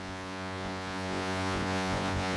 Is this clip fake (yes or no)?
yes